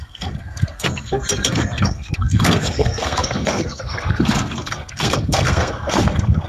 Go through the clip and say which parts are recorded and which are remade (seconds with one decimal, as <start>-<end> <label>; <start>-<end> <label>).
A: 0.0-6.5 remade